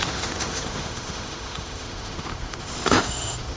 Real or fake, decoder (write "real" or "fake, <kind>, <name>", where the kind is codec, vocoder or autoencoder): fake, autoencoder, DAC-VAE